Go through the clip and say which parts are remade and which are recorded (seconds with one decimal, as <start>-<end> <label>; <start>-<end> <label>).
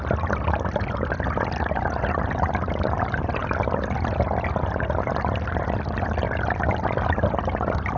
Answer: 0.0-8.0 recorded